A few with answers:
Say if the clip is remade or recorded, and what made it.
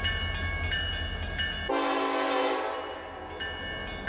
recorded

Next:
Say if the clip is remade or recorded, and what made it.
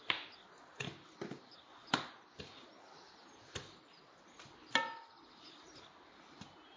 recorded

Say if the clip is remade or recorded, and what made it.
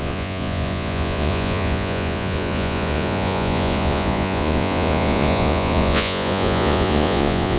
remade, vocoder, Vocos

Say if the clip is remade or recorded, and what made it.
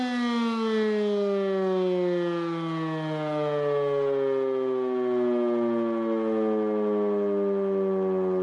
recorded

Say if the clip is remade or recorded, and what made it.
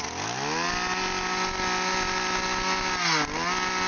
recorded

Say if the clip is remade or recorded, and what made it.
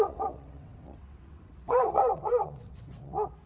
remade, vocoder, WaveNeXt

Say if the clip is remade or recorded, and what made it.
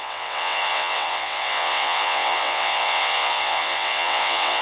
remade, vocoder, WaveNeXt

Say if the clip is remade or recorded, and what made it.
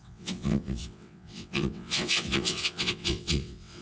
remade, vocoder, WaveNeXt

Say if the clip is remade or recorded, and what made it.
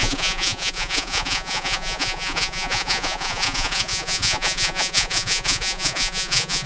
remade, vocoder, Vocos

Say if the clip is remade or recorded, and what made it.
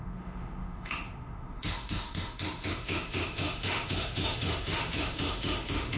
remade, autoencoder, DAC-VAE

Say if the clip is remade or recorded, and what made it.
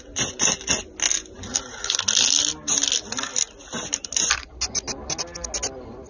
recorded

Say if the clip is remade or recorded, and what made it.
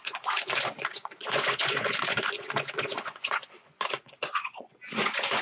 remade, vocoder, Vocos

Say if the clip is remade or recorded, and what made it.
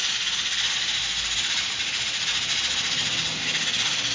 recorded